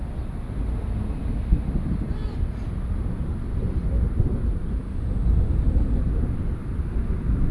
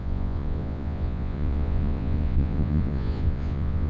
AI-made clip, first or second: second